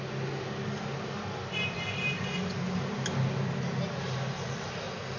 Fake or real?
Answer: real